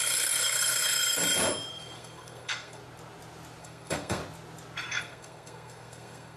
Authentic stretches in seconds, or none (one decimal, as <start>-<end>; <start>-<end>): 1.2-1.7; 2.8-3.6; 4.2-4.9